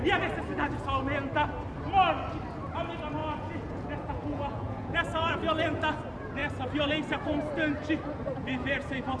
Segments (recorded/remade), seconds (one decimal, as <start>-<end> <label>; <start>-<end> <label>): 0.0-3.2 recorded; 3.2-5.3 remade; 5.3-8.4 recorded; 8.4-9.2 remade